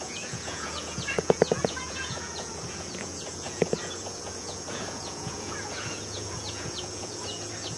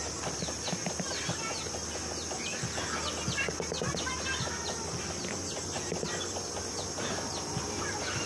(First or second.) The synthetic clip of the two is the first